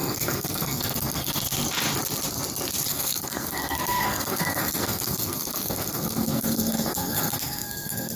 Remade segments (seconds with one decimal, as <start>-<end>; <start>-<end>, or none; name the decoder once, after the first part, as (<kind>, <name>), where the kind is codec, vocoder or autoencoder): 0.0-1.4 (codec, SNAC); 2.9-8.2